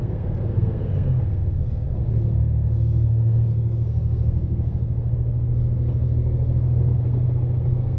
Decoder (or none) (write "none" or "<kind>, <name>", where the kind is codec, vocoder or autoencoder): codec, SNAC